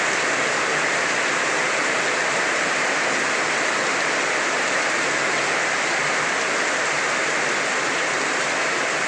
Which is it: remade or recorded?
recorded